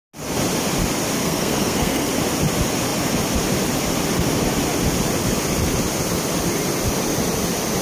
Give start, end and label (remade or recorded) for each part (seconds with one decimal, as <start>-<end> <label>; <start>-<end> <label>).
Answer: 0.0-1.2 recorded; 1.2-2.1 remade; 2.1-7.8 recorded